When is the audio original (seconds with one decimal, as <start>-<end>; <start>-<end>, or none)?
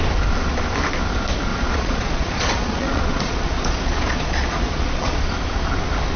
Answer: 0.0-1.5; 5.2-6.2